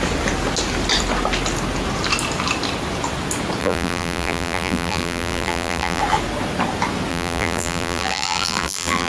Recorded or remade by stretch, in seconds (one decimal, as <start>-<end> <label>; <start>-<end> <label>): 0.0-3.6 recorded; 3.6-6.0 remade; 6.0-7.1 recorded; 7.1-9.1 remade

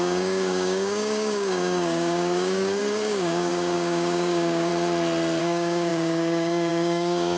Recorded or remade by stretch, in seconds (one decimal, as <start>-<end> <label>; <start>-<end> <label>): 0.0-4.7 remade; 4.7-5.4 recorded; 5.4-7.4 remade